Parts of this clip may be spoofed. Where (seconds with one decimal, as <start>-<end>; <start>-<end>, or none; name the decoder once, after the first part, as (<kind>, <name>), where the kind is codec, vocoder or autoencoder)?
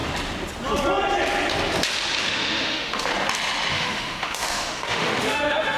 2.2-3.1 (autoencoder, DAC-VAE); 3.7-5.8